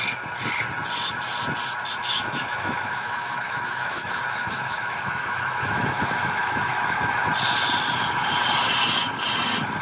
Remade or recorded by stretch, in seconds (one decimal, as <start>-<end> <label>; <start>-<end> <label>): 0.0-2.0 recorded; 2.0-7.3 remade; 7.3-9.8 recorded